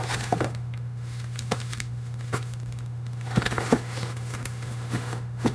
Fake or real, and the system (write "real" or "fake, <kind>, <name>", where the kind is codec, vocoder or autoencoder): fake, autoencoder, DAC-VAE